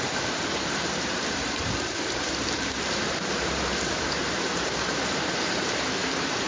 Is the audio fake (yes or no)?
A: yes